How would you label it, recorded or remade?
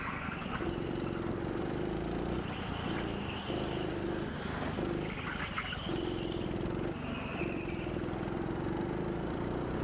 recorded